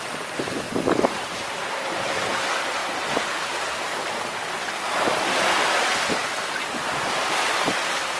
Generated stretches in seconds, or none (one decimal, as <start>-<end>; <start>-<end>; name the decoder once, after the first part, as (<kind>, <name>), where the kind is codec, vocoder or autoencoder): none